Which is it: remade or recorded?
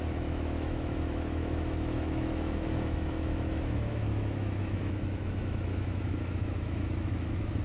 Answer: remade